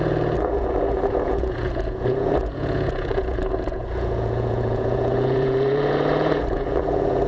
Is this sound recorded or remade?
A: remade